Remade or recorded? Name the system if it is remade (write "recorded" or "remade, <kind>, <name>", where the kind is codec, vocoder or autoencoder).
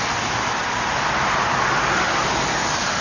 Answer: recorded